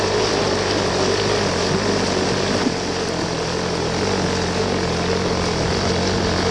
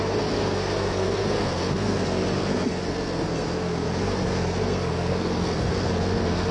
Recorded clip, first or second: first